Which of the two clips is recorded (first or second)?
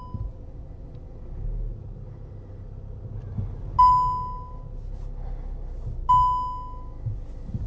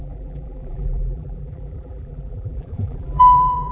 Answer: first